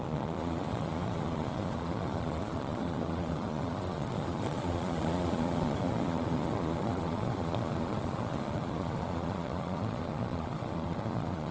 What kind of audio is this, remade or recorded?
remade